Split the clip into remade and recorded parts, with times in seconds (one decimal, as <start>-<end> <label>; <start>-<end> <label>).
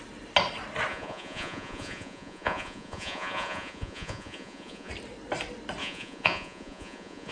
0.0-0.9 recorded; 0.9-4.9 remade; 4.9-5.8 recorded; 5.8-7.3 remade